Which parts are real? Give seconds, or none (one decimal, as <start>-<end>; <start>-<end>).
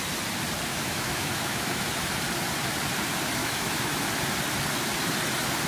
0.0-0.7; 1.9-3.4; 4.1-5.7